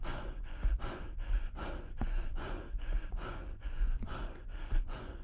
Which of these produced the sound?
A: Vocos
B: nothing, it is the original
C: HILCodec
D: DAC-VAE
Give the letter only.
A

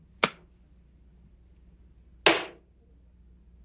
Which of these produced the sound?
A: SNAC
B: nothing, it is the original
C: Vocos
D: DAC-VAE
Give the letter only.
B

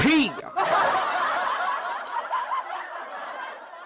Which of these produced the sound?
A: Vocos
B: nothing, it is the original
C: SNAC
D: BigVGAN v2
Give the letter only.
B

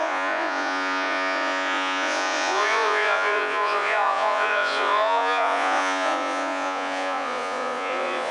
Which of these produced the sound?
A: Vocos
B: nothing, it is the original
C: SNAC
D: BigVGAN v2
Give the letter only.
A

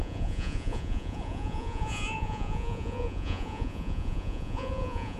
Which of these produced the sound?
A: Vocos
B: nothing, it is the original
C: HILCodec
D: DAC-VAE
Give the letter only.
A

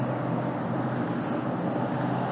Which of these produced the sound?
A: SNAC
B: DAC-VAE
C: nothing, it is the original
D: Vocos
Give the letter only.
C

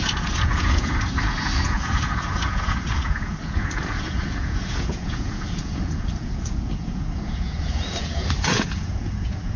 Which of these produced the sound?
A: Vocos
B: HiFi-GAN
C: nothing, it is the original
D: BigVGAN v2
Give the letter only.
A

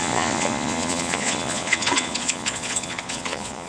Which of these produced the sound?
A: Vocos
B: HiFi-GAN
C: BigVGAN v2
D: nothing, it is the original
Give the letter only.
A